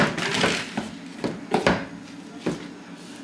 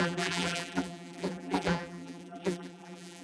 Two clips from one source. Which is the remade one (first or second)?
second